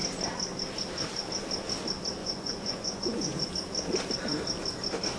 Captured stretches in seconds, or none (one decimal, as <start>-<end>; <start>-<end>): 0.0-2.2; 3.5-5.2